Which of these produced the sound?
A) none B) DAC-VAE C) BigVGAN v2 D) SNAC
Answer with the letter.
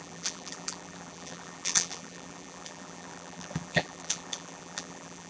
C